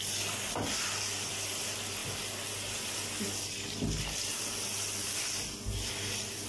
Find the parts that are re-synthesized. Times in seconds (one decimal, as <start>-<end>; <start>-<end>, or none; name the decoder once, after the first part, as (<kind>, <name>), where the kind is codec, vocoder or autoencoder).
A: none